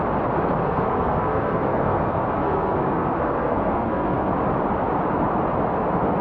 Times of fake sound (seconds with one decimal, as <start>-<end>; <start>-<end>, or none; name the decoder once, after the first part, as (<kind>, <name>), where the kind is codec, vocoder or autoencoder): 0.6-4.3 (codec, SNAC)